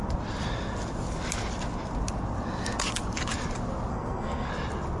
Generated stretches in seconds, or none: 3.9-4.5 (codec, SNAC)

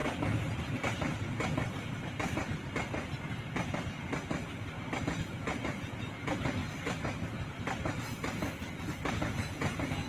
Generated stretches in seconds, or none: 5.0-6.6 (vocoder, Vocos); 9.1-10.1

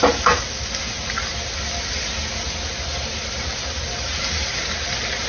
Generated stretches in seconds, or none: none

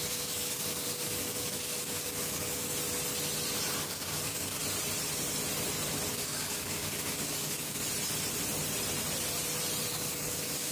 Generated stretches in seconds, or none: 0.0-2.7 (codec, DAC); 3.8-4.6; 6.1-7.8; 9.9-10.7